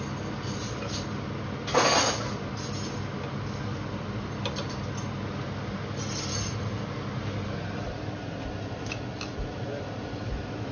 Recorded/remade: recorded